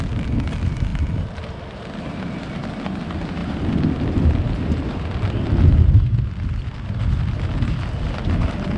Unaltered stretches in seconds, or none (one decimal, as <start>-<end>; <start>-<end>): 0.0-8.8